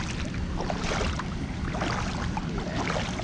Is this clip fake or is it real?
real